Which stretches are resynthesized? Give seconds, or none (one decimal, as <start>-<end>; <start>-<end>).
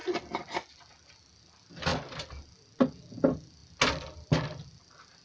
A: none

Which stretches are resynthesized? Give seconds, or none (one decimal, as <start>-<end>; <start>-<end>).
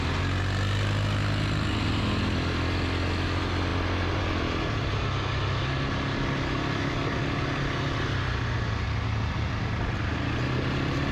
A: none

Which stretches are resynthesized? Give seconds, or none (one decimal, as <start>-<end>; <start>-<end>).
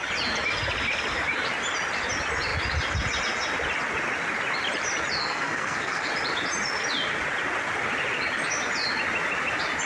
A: 5.2-6.1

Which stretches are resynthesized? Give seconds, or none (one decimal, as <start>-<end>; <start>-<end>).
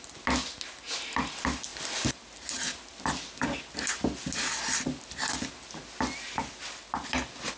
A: none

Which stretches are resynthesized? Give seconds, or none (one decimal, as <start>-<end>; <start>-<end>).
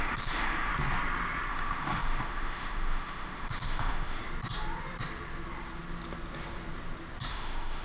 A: 0.0-0.7; 1.5-4.2; 7.3-7.8